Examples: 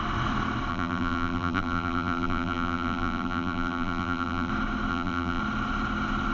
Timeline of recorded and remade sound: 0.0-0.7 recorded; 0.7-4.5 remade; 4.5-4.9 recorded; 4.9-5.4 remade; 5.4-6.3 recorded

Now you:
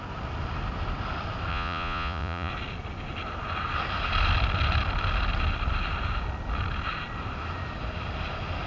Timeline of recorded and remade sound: 0.0-1.5 recorded; 1.5-2.5 remade; 2.5-8.7 recorded